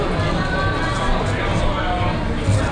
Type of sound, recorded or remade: recorded